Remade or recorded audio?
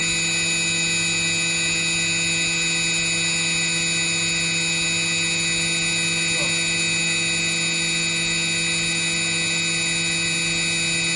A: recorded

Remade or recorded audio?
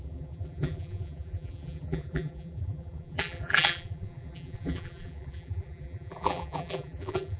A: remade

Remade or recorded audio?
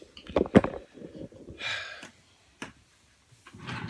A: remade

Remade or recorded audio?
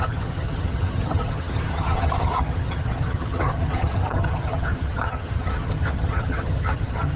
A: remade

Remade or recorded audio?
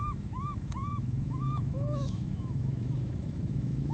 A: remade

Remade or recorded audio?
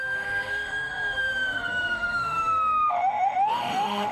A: remade